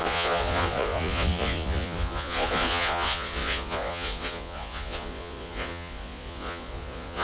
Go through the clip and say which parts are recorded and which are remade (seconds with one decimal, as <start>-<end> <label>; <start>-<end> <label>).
0.0-7.2 remade